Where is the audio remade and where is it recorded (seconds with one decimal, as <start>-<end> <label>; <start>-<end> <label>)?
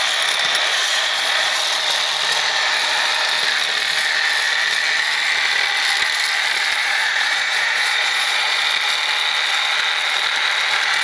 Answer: 0.0-0.7 recorded; 0.7-1.6 remade; 1.6-6.8 recorded; 6.8-8.6 remade; 8.6-11.0 recorded